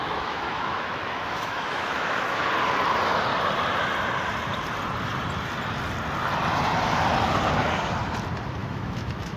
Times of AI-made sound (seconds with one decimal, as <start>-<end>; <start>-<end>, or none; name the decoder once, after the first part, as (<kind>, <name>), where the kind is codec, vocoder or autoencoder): 0.0-2.4 (autoencoder, DAC-VAE); 8.6-9.4